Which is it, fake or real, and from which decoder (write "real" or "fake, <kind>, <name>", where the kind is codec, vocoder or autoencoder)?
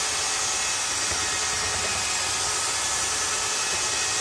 real